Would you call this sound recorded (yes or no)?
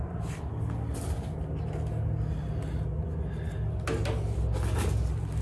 yes